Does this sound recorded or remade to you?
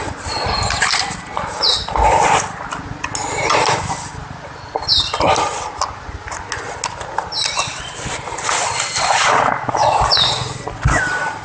recorded